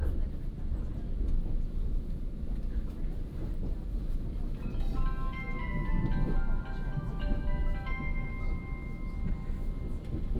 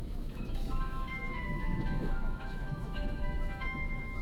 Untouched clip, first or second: first